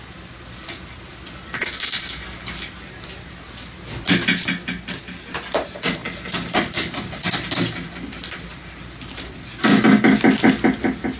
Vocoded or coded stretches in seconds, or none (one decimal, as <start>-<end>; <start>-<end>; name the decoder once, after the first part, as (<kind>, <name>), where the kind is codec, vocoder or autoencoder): none